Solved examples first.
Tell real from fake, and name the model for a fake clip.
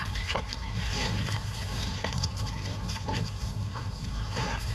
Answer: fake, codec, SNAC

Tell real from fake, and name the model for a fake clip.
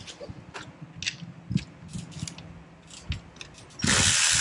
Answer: real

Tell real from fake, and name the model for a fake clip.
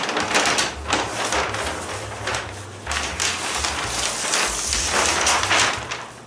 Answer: real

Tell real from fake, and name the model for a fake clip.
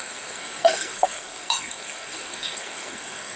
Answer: fake, codec, SNAC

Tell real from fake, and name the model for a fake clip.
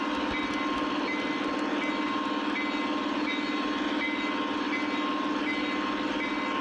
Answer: real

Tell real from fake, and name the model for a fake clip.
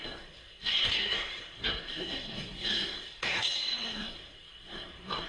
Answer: fake, codec, SNAC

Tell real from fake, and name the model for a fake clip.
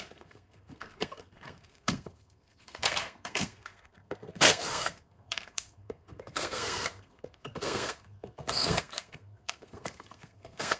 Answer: fake, codec, SNAC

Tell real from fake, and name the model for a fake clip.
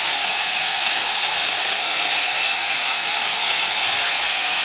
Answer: fake, codec, SNAC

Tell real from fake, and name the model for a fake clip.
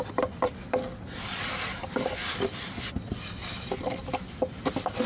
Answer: real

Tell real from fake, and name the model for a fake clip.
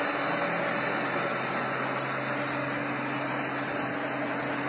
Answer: real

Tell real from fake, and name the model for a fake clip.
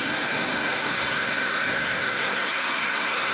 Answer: fake, codec, SNAC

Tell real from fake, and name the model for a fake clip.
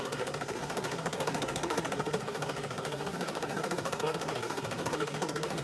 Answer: fake, codec, SNAC